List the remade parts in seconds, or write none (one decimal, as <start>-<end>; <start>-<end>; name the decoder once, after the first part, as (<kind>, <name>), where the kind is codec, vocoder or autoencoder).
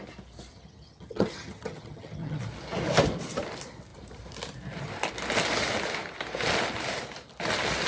0.5-2.4 (vocoder, HiFi-GAN)